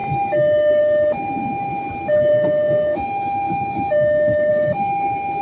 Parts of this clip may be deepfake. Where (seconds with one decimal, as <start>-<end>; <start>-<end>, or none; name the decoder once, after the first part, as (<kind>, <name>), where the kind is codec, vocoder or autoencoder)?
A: 2.3-4.5 (codec, DAC)